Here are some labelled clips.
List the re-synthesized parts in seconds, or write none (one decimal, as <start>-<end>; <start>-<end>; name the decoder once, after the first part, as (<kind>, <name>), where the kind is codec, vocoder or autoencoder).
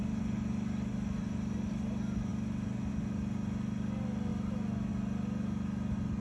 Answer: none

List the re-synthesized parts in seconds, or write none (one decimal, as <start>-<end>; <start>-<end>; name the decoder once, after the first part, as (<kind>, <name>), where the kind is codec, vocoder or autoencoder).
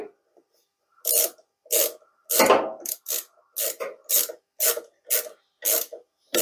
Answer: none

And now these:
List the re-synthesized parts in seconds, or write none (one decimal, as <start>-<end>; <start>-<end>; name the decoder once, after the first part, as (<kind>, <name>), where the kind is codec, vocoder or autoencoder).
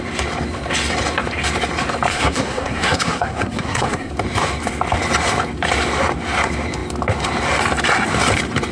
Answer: 2.1-4.1 (codec, SNAC)